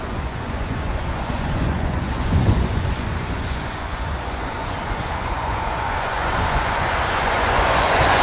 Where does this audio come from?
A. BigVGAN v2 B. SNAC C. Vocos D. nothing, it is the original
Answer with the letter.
C